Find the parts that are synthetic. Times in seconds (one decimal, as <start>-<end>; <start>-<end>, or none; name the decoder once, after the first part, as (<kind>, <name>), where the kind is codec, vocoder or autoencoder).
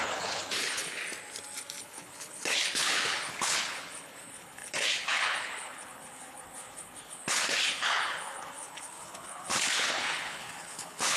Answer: 0.0-1.0 (codec, HILCodec); 1.8-11.2